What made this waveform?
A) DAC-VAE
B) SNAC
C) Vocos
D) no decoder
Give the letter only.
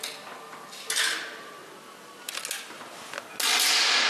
D